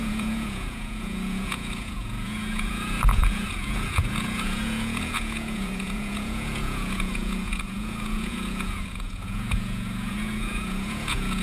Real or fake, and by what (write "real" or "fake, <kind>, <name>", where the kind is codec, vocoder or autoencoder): fake, vocoder, Vocos